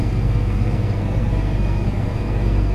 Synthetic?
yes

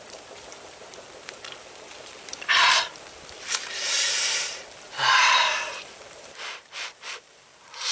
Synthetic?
yes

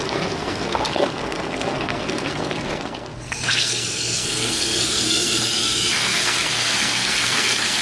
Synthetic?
yes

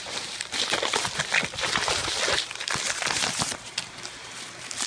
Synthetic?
yes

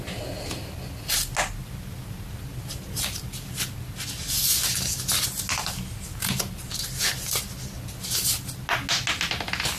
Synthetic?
no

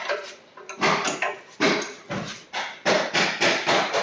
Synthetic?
no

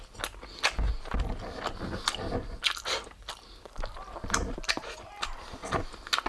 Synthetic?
no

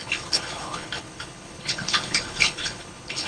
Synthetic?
yes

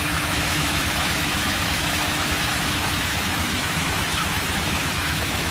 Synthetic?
yes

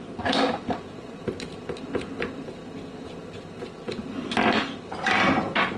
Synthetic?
no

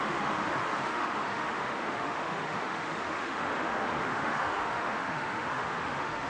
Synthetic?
yes